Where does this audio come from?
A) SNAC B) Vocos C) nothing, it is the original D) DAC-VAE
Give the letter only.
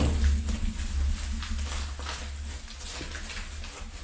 C